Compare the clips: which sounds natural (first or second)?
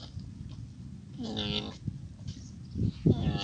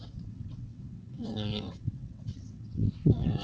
first